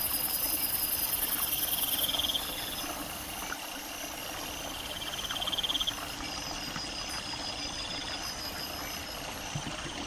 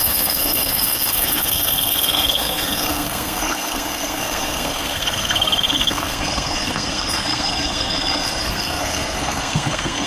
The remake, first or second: second